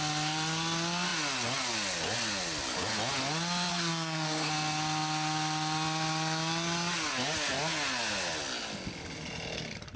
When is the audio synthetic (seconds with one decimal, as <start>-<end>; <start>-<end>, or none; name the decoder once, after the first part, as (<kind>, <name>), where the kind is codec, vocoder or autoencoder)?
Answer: 3.7-4.5 (codec, SNAC)